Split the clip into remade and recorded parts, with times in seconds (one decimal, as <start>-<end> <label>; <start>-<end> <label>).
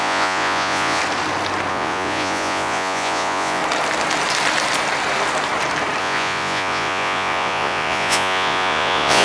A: 0.0-1.0 remade; 1.0-1.7 recorded; 1.7-3.6 remade; 3.6-6.0 recorded; 6.0-9.2 remade